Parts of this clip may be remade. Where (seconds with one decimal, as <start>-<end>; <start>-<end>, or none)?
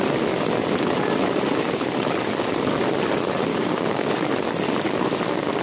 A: 3.5-4.1